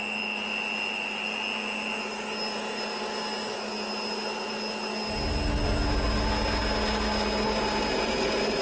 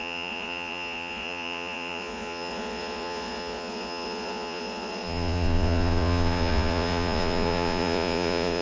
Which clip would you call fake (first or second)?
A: second